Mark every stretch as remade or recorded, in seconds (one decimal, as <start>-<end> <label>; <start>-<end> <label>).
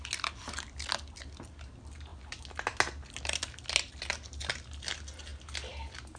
0.0-6.2 recorded